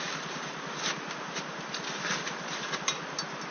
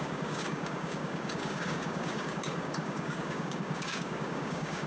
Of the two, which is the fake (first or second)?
second